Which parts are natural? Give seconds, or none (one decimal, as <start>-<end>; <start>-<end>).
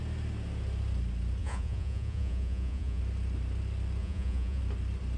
0.0-1.4; 3.0-4.0; 4.6-5.2